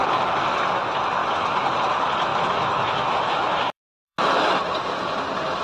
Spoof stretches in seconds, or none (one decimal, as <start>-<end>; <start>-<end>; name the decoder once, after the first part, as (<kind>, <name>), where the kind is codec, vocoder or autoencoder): 2.3-4.6 (autoencoder, DAC-VAE)

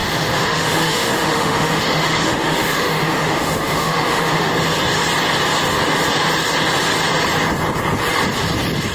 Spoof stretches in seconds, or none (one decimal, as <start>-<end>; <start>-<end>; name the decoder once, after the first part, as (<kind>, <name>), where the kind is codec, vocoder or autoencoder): 0.0-4.5 (autoencoder, DAC-VAE)